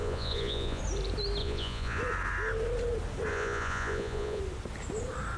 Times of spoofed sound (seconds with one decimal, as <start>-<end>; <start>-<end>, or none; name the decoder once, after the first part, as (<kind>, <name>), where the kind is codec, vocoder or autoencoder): 0.0-0.8 (vocoder, Vocos); 1.4-2.0; 3.3-4.4